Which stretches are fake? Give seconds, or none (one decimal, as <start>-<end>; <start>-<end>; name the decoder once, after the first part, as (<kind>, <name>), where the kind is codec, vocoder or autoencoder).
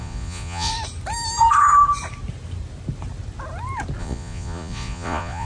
0.0-0.7 (vocoder, Vocos); 4.0-5.5